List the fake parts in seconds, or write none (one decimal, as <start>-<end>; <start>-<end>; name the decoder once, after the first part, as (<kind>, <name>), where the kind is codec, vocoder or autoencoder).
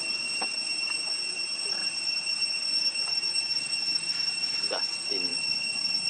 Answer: 1.8-4.7 (vocoder, BigVGAN v2)